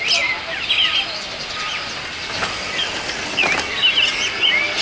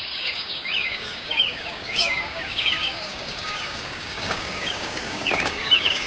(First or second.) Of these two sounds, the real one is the first